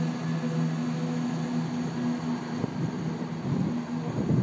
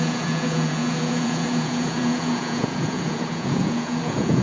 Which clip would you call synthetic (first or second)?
second